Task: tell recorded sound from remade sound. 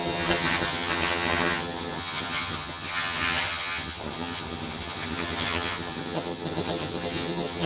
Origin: remade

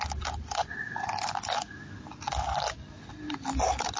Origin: recorded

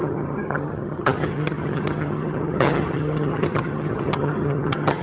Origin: remade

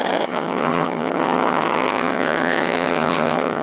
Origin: remade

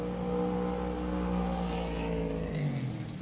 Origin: recorded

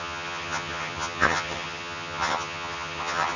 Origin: remade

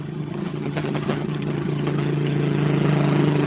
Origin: remade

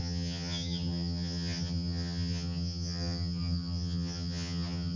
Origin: remade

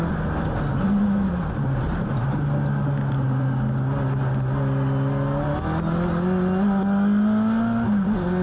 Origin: recorded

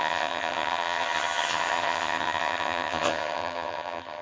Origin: remade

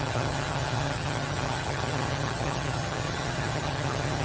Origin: remade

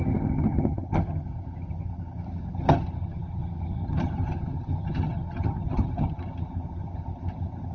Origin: remade